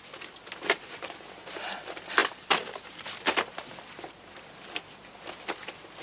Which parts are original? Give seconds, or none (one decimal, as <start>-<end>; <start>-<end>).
0.0-2.2; 3.1-6.0